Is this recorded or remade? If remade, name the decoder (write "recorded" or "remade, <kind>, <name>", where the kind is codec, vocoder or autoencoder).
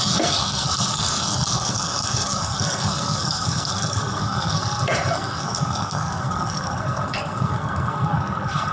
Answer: remade, codec, SNAC